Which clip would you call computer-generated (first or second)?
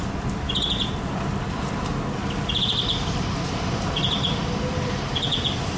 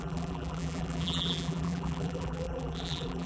second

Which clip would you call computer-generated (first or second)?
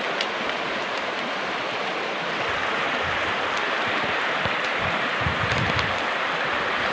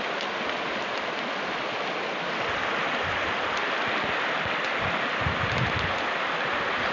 first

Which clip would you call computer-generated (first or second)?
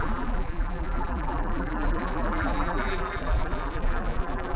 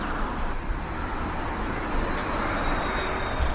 first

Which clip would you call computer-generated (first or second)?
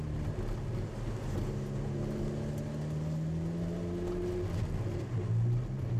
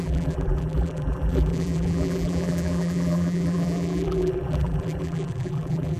second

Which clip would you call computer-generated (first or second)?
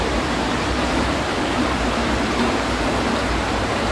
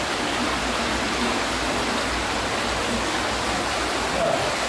first